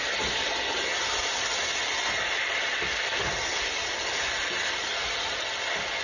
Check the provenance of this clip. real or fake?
real